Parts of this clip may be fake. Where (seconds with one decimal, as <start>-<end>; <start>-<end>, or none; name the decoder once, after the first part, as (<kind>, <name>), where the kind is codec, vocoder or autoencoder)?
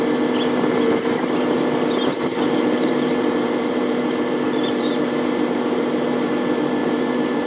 2.1-6.3 (vocoder, BigVGAN v2); 6.8-7.5